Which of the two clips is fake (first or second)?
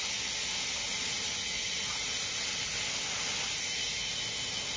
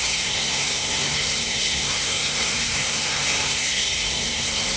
second